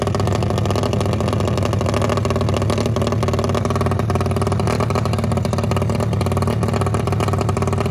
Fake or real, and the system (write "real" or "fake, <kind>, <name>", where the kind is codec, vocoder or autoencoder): real